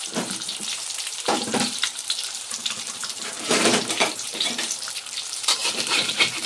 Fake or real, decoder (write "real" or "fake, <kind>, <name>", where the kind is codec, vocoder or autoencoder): fake, vocoder, BigVGAN v2